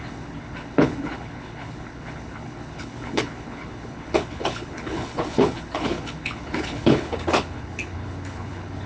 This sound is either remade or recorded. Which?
remade